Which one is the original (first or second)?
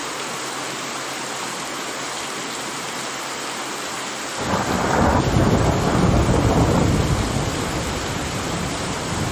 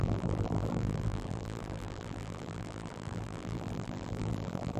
first